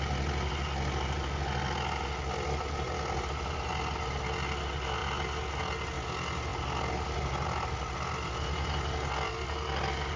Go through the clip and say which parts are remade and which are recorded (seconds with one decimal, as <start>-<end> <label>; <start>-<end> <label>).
0.0-10.2 recorded